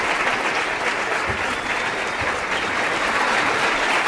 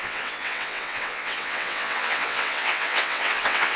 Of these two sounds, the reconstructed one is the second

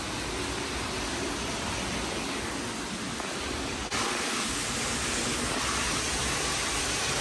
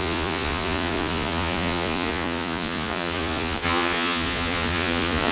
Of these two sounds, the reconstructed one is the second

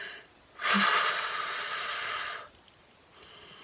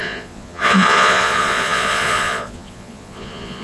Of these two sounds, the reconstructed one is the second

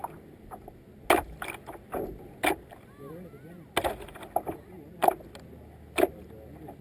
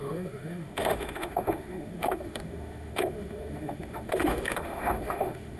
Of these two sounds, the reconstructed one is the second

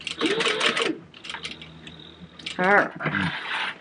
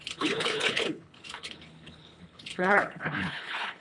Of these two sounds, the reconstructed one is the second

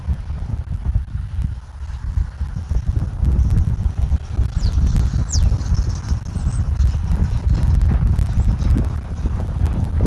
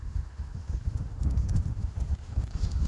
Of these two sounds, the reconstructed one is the second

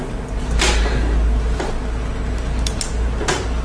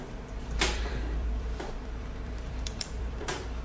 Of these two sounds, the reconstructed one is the second